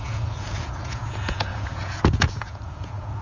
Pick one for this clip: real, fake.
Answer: fake